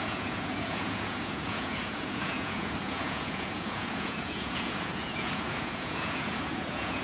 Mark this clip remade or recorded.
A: remade